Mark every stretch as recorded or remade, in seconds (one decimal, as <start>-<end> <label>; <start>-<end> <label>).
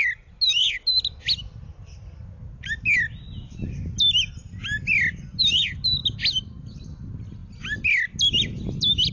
0.0-9.1 recorded